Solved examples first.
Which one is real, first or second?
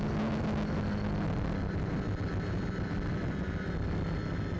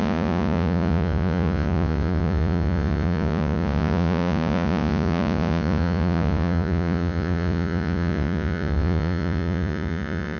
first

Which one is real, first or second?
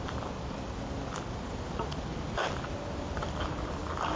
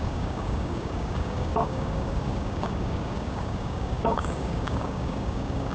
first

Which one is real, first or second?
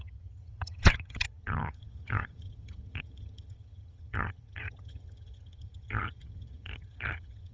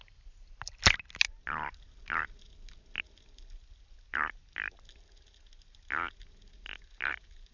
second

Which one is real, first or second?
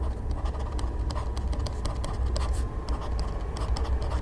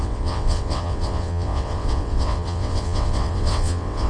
first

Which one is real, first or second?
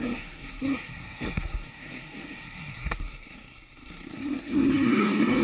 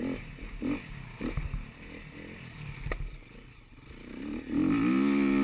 second